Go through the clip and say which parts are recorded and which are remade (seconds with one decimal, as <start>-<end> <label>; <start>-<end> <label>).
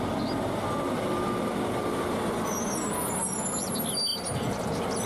0.0-5.1 recorded